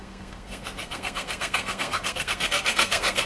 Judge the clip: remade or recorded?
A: remade